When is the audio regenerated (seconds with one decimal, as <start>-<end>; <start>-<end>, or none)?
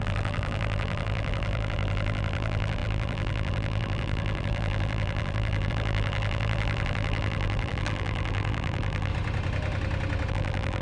0.0-9.1; 10.3-10.8